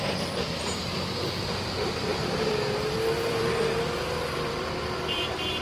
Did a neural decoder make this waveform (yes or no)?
yes